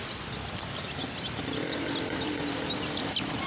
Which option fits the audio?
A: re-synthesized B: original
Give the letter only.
B